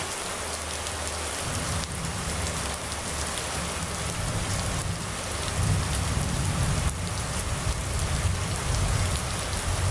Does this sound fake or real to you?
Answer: real